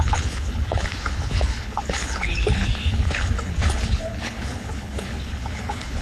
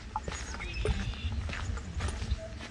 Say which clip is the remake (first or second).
first